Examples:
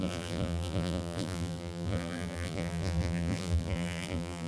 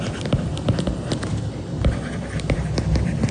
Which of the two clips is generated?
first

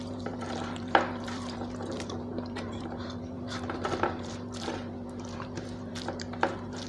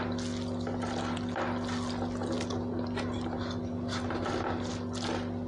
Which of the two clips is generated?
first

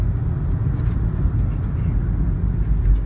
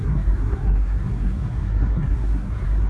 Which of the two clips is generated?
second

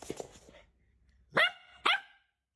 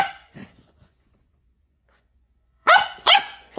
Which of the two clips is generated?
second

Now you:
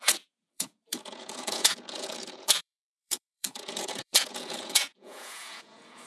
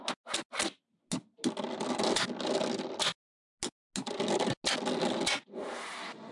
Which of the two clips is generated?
first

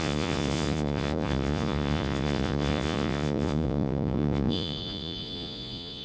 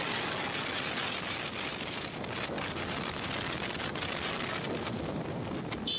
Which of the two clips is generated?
first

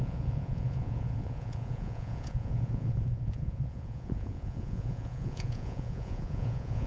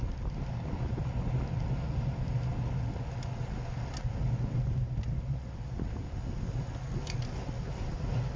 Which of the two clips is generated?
first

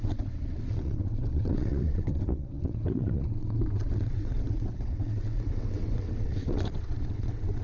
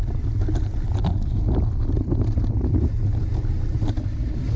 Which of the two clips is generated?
first